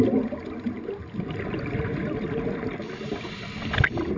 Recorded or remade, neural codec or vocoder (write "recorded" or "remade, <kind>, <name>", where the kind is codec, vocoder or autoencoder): recorded